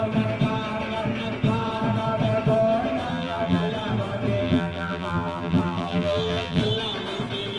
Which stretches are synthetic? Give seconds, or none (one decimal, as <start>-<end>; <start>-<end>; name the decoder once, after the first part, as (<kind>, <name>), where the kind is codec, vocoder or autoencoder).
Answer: 3.1-3.7 (vocoder, BigVGAN v2); 4.4-6.6